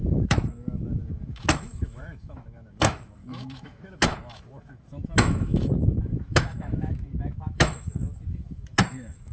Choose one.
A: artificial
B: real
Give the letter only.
A